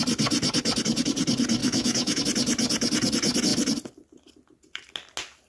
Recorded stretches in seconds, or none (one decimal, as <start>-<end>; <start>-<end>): 0.0-1.6; 2.2-5.5